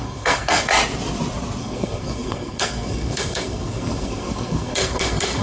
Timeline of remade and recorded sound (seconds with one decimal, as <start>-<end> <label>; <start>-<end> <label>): 0.0-0.7 remade; 0.7-1.6 recorded; 1.6-5.4 remade